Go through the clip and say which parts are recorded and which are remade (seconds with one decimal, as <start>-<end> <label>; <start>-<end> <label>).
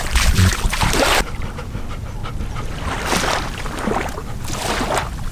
0.0-2.2 remade; 2.2-3.8 recorded; 3.8-4.2 remade; 4.2-5.3 recorded